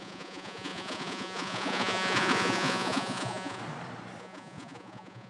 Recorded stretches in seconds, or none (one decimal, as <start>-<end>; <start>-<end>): 3.6-4.2